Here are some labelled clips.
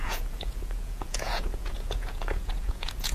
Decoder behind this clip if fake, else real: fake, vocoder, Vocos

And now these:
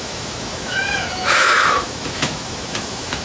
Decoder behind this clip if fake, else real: fake, autoencoder, DAC-VAE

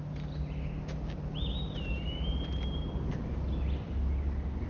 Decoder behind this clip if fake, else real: real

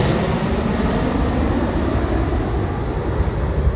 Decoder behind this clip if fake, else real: real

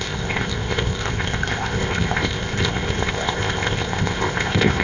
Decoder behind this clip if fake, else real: fake, codec, ZipCodec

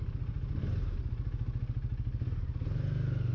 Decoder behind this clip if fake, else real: real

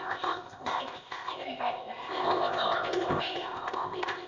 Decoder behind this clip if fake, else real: fake, codec, ZipCodec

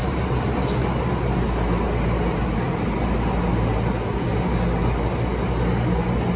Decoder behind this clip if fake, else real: real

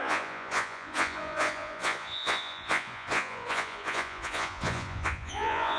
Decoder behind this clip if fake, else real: fake, vocoder, Vocos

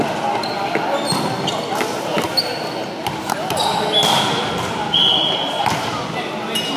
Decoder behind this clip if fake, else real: real